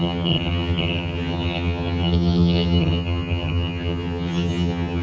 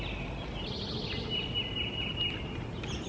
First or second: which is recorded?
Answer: second